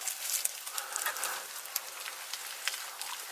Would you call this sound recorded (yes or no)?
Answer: no